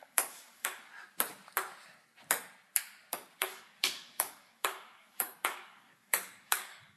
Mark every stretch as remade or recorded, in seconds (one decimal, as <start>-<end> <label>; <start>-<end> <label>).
0.0-0.9 remade; 0.9-3.4 recorded; 3.4-7.0 remade